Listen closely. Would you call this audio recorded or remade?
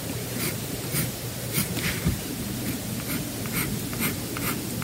recorded